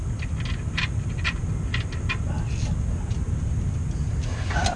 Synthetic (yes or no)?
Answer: no